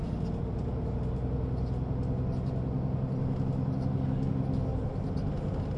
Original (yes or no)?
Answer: yes